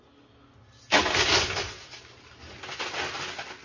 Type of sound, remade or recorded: recorded